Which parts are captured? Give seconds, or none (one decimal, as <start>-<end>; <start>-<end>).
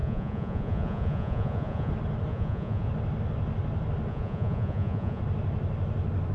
1.9-2.3; 2.9-4.1; 5.2-6.3